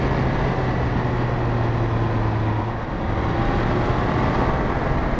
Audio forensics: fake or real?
real